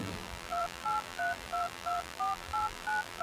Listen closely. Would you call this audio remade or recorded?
remade